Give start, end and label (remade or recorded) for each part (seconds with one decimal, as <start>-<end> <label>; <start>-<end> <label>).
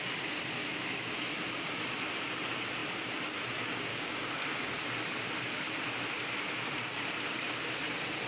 0.0-0.6 recorded; 0.6-1.2 remade; 1.2-3.9 recorded; 3.9-4.8 remade; 4.8-8.3 recorded